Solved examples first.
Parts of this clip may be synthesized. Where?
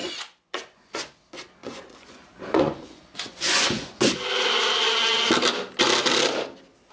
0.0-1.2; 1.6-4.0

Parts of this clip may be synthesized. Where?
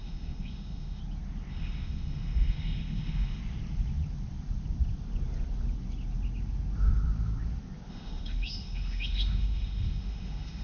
0.0-1.0; 1.5-3.4; 7.9-10.6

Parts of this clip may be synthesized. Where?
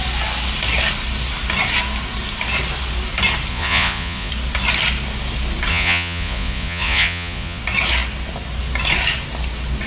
3.5-4.3; 5.7-7.6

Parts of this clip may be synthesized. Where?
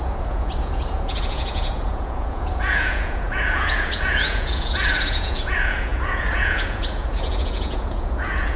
0.0-8.6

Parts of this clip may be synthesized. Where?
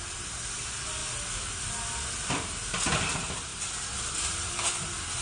none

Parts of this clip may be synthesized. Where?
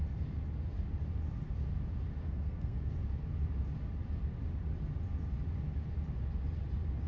2.2-2.9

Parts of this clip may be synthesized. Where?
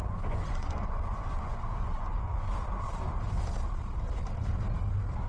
0.0-2.5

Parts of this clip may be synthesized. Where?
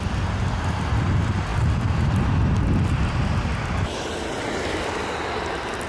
none